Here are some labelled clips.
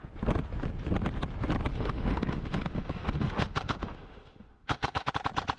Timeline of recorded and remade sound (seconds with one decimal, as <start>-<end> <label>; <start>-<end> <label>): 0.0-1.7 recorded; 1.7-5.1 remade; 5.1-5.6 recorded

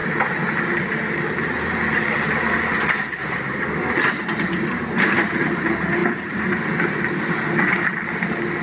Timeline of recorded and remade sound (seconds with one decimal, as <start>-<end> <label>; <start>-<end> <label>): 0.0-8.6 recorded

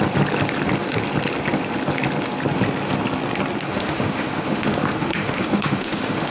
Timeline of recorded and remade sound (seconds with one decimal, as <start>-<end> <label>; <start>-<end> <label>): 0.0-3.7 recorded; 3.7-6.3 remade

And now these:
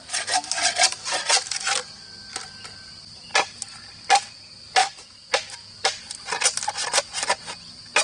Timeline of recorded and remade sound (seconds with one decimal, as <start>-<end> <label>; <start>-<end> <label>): 0.0-4.8 recorded; 4.8-5.3 remade; 5.3-8.0 recorded

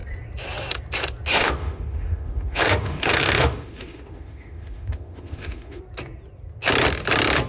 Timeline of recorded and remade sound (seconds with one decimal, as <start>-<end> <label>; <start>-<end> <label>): 0.0-1.3 recorded; 1.3-5.8 remade; 5.8-7.5 recorded